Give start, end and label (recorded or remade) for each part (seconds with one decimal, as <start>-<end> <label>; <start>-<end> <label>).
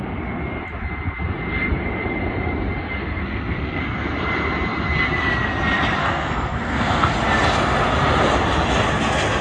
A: 0.0-3.0 recorded; 3.0-3.8 remade; 3.8-6.0 recorded; 6.0-7.1 remade; 7.1-9.4 recorded